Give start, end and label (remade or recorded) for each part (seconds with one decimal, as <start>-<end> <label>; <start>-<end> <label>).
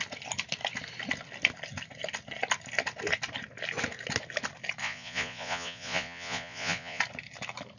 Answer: 0.0-4.8 recorded; 4.8-7.0 remade; 7.0-7.8 recorded